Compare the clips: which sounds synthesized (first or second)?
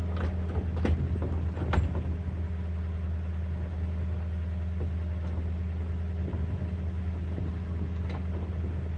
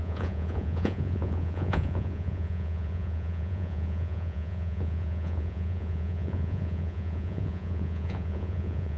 second